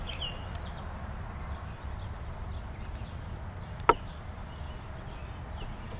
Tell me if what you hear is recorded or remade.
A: recorded